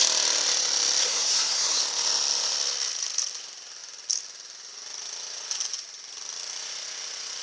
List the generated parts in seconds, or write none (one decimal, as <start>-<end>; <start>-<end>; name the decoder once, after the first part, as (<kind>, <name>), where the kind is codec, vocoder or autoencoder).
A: 1.0-1.8 (codec, SNAC)